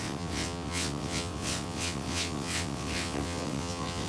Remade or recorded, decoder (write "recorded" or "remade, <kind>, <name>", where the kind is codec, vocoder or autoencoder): remade, vocoder, WaveNeXt